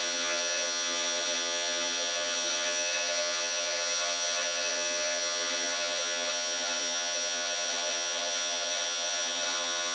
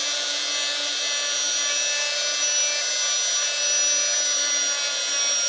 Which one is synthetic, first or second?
first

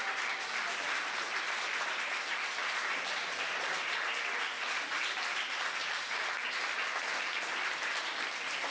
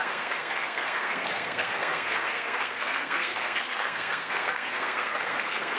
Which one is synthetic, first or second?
second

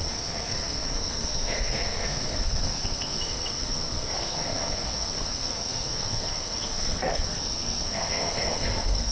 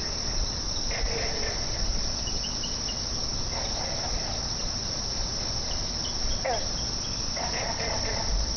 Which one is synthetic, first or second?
first